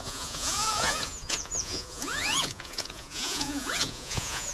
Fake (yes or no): yes